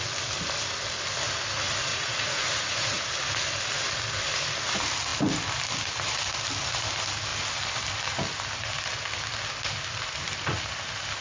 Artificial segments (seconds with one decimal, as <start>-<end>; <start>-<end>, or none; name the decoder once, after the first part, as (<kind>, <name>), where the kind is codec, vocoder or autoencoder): 1.9-3.0 (vocoder, Vocos)